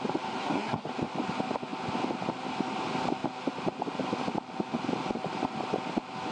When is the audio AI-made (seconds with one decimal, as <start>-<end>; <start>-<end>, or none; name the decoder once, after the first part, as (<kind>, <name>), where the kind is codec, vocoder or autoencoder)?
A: 0.4-0.9 (codec, SNAC)